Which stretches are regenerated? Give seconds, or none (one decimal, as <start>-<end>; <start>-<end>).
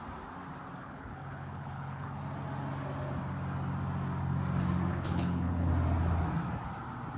0.8-2.2; 4.9-5.7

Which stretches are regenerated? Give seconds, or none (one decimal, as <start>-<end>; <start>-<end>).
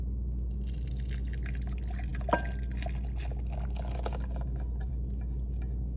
none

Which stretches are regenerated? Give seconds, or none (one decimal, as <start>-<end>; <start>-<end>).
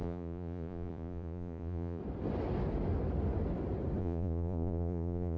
0.0-2.0; 4.0-5.4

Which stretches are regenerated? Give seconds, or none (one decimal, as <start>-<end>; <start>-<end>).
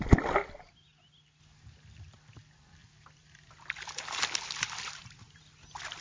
2.8-5.4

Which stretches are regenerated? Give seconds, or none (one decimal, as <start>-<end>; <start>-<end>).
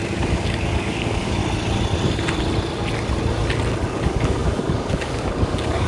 0.0-1.4; 3.9-5.9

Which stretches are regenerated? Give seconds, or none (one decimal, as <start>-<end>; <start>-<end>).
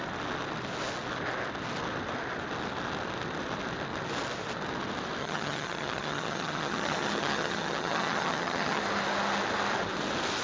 5.2-8.8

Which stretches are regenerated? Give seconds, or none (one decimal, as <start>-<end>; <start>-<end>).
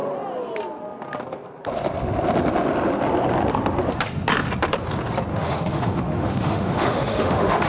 5.3-7.7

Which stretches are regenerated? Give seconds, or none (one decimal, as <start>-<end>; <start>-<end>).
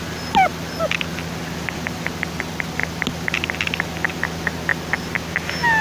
none